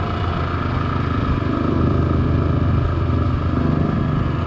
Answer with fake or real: real